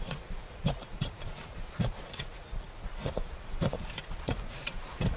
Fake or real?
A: fake